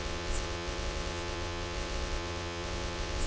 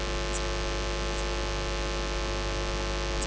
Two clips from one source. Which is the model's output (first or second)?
first